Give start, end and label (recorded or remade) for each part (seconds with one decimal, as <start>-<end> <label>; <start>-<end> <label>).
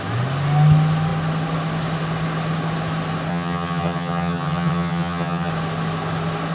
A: 0.0-3.3 recorded; 3.3-5.5 remade; 5.5-6.5 recorded